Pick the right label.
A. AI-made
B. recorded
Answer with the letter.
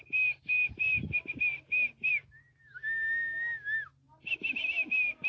B